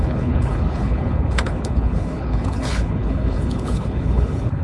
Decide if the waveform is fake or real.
fake